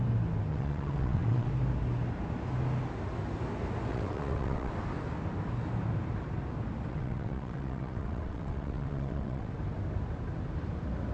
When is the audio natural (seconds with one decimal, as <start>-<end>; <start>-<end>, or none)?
0.0-0.5; 1.5-3.9; 4.7-6.9; 9.5-11.1